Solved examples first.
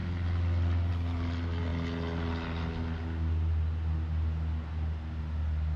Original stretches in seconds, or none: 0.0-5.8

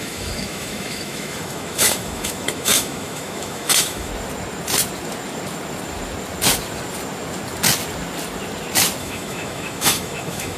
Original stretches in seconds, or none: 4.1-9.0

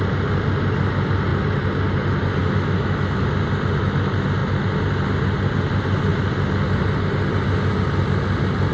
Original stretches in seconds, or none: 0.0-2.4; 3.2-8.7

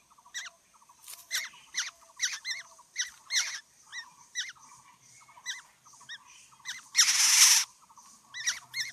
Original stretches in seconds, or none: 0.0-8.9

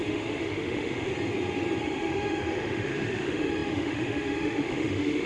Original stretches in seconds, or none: 1.1-1.8